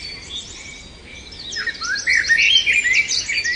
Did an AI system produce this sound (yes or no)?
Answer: no